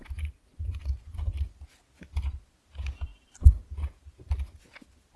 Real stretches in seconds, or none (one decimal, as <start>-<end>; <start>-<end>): 0.0-0.5; 1.3-5.2